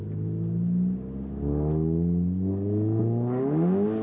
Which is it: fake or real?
real